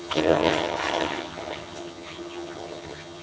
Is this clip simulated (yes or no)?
yes